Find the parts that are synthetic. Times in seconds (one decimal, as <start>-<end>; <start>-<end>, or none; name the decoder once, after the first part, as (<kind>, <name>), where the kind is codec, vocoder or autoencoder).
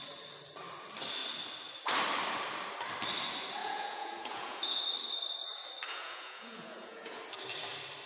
3.6-4.8 (vocoder, Vocos); 5.9-7.2